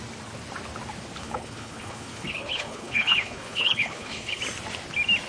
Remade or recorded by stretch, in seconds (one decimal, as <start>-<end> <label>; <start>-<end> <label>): 0.0-1.2 recorded; 1.2-4.4 remade; 4.4-5.3 recorded